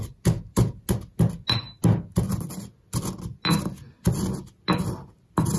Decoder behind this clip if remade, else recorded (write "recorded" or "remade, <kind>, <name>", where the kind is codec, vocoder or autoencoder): recorded